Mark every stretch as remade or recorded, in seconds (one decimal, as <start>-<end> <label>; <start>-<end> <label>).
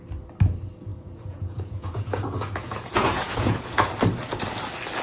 0.0-0.9 recorded; 0.9-3.9 remade; 3.9-5.0 recorded